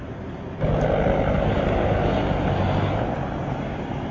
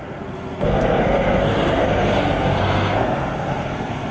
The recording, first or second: first